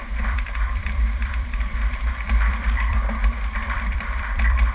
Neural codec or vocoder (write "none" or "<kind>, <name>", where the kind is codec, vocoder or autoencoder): vocoder, BigVGAN v2